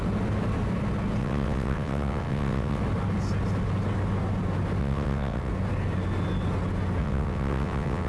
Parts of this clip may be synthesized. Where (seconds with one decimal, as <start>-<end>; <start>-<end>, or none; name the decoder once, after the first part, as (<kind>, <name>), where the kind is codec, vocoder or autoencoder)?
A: 1.2-2.8 (vocoder, WaveNeXt); 4.8-5.5; 7.0-8.1